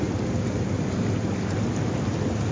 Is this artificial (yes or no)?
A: no